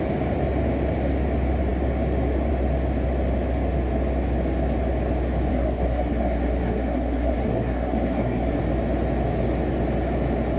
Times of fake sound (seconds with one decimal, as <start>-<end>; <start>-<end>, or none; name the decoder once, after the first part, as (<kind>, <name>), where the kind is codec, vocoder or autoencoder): 5.5-8.6 (codec, SNAC)